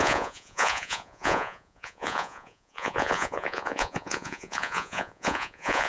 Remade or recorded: remade